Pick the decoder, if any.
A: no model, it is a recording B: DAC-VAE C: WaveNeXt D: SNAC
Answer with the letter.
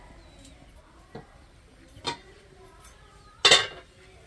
A